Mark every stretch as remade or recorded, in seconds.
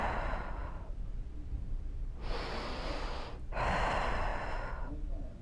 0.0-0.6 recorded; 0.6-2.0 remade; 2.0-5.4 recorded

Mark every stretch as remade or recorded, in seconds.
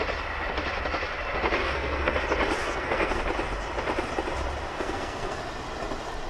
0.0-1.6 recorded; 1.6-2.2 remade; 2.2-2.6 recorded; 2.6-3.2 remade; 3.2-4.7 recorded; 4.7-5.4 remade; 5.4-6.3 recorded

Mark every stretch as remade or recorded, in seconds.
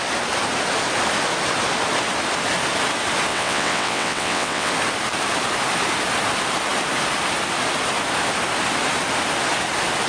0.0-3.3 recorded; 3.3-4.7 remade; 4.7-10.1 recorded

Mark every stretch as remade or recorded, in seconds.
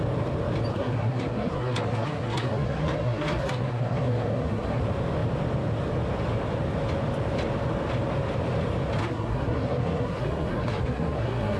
0.0-0.7 recorded; 0.7-4.8 remade; 4.8-9.0 recorded; 9.0-11.6 remade